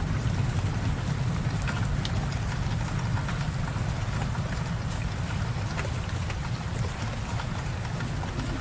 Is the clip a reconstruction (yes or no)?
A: no